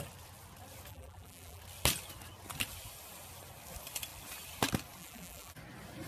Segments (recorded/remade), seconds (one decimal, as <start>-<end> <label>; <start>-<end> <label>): 0.0-0.9 recorded; 0.9-1.6 remade; 1.6-5.0 recorded; 5.0-5.5 remade; 5.5-6.1 recorded